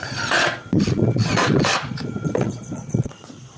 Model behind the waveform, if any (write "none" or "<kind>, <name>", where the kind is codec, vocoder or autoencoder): vocoder, Vocos